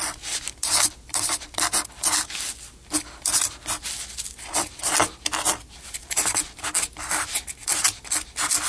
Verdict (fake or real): real